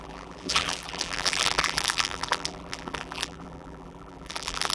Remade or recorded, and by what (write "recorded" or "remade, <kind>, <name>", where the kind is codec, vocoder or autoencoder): remade, vocoder, BigVGAN v2